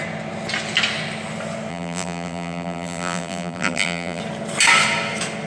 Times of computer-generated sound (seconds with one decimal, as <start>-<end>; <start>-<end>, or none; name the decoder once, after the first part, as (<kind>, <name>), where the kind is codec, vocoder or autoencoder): 1.7-4.2 (vocoder, BigVGAN v2)